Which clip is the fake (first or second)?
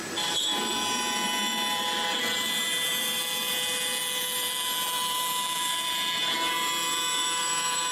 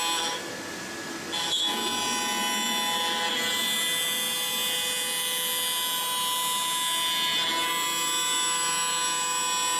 first